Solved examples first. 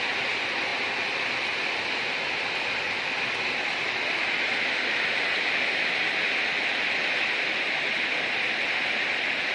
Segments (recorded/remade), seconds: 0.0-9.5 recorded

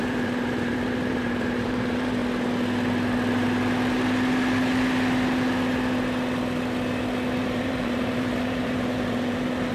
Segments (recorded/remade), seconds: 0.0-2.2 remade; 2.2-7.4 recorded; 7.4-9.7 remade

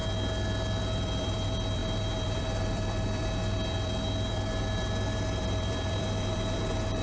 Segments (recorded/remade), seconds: 0.0-0.8 recorded; 0.8-7.0 remade

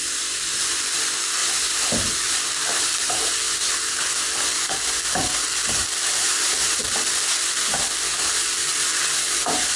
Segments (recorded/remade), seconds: 0.0-1.4 recorded; 1.4-3.2 remade; 3.2-6.1 recorded; 6.1-6.8 remade; 6.8-9.8 recorded

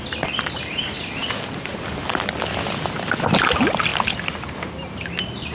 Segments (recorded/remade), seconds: 0.0-5.5 recorded